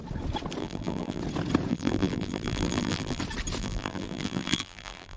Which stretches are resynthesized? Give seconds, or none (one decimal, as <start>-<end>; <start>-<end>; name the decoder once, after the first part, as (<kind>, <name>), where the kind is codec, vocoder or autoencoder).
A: 0.6-1.2 (vocoder, BigVGAN v2); 1.7-3.2; 3.6-5.2